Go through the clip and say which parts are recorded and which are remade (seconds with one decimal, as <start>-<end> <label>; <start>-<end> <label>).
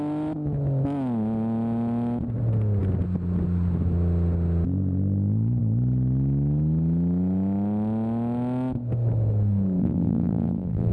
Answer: 0.0-9.8 recorded; 9.8-10.9 remade